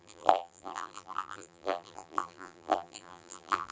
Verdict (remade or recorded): remade